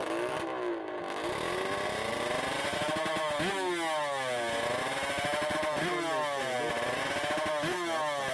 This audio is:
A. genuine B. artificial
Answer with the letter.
A